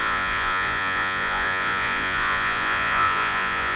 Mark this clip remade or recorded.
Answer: remade